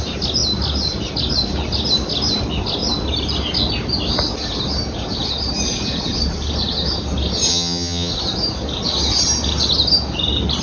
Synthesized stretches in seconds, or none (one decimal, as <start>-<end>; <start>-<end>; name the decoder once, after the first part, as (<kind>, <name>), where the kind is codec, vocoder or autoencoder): 7.5-8.1 (vocoder, HiFi-GAN)